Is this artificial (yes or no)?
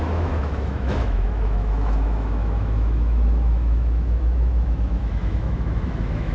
yes